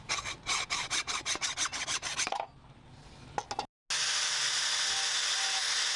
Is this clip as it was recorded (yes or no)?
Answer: yes